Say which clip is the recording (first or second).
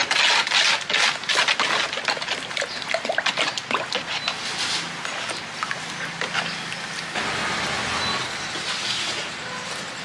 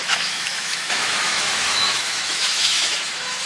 first